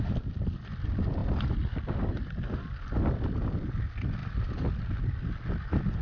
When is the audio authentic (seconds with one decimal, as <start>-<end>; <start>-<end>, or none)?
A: 0.0-1.2; 2.7-4.2; 4.8-6.0